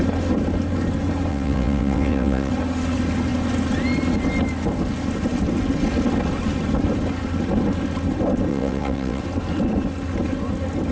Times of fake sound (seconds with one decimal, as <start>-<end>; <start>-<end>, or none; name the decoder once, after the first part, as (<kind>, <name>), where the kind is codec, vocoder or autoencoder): 1.3-2.5 (vocoder, WaveNeXt); 8.5-9.2